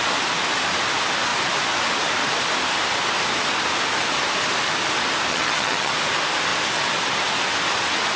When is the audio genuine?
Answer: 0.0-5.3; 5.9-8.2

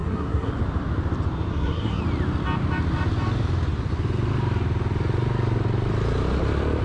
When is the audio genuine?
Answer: 0.5-1.5; 2.0-6.8

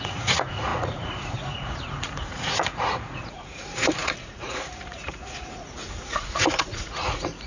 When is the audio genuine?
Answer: none

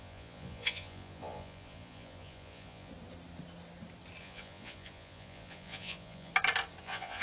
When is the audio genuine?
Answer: 2.9-4.2; 6.3-6.8

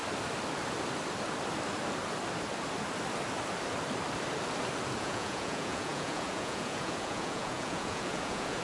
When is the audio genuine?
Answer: 0.0-5.0

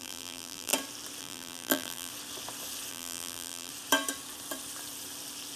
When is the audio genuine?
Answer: 0.7-1.2; 2.1-2.9; 3.7-5.6

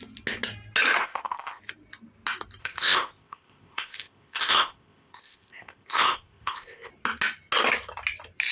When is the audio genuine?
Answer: 0.0-1.0; 1.6-2.6; 6.9-8.5

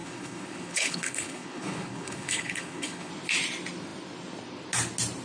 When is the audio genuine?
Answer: 3.1-5.2